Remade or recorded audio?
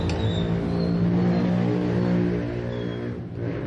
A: recorded